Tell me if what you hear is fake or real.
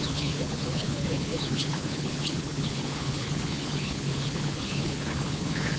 fake